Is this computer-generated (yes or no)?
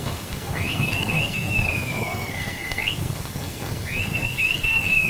yes